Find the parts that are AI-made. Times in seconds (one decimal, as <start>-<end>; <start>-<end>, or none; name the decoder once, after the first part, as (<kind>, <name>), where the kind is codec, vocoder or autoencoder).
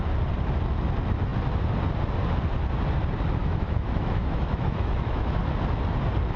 3.4-5.4 (autoencoder, DAC-VAE)